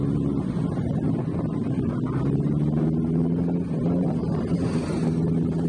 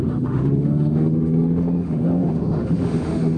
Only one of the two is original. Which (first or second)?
first